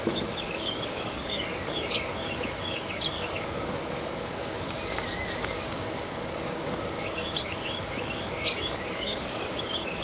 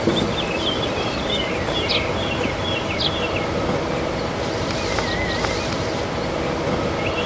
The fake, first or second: first